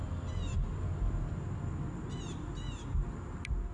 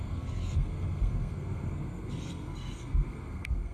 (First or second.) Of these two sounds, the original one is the first